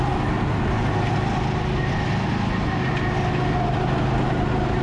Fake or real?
real